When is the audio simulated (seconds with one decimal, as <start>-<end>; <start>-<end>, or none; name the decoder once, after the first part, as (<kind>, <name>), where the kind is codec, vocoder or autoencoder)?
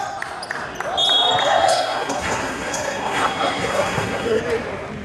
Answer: 1.4-4.4 (codec, SNAC)